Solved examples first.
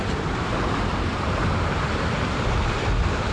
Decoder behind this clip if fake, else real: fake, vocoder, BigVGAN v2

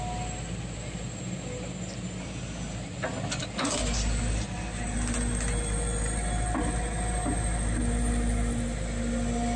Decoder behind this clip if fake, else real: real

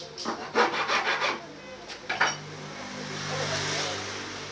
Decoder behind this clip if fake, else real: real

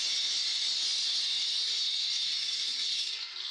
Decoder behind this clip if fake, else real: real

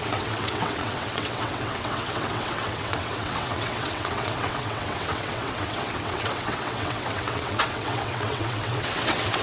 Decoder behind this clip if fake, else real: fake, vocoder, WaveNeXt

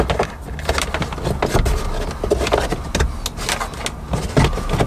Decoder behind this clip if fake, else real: real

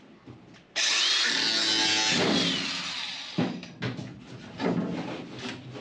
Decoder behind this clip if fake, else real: real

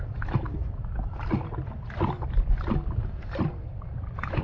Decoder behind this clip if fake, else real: real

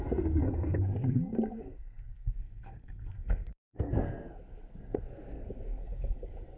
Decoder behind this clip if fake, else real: fake, codec, SNAC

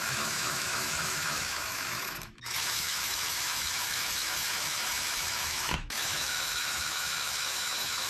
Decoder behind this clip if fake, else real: fake, autoencoder, DAC-VAE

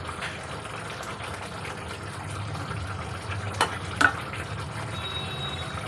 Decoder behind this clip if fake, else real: real